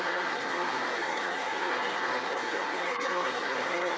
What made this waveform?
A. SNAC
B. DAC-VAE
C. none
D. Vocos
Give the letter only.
A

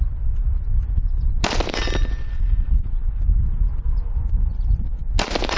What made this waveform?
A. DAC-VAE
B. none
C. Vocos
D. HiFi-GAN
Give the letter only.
B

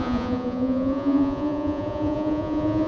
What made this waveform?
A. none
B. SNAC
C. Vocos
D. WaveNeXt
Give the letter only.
C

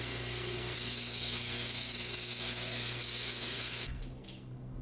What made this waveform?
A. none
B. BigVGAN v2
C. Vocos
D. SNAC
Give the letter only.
D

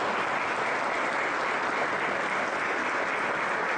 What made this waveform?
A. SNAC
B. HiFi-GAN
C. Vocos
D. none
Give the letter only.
D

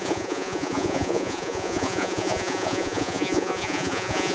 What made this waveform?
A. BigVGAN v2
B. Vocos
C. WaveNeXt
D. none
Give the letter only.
B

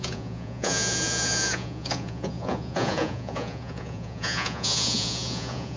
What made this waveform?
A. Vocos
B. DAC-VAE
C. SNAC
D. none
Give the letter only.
A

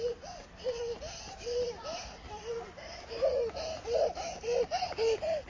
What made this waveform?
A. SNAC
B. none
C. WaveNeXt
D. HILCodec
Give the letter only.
B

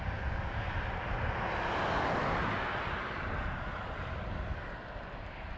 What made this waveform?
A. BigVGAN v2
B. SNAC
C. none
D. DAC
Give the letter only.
C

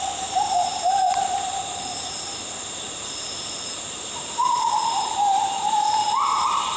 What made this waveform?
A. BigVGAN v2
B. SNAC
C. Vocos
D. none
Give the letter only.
A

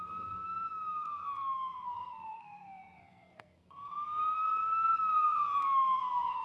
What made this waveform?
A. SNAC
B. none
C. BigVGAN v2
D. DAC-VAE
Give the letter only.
A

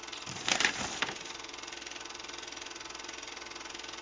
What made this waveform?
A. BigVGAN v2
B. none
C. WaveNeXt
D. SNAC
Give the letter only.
B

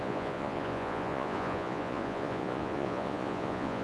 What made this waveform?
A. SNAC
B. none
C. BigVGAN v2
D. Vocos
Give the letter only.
D